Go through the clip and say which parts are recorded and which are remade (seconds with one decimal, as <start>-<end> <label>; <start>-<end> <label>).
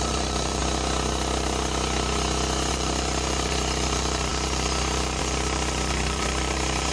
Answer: 0.0-0.6 remade; 0.6-2.7 recorded; 2.7-6.9 remade